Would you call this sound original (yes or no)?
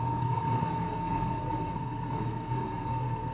no